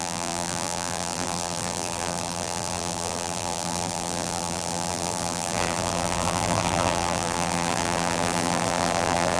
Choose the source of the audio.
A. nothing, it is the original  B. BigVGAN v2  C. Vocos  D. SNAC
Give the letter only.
B